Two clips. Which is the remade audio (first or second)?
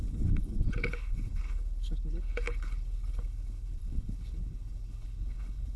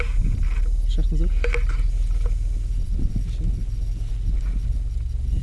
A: first